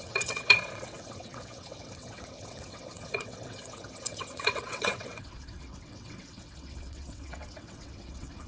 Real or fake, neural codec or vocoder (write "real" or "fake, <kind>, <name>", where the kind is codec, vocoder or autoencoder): fake, vocoder, WaveNeXt